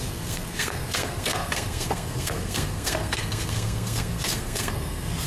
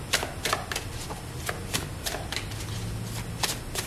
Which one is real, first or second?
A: second